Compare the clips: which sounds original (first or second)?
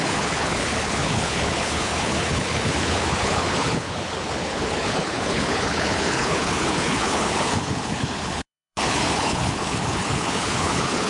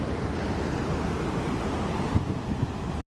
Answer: second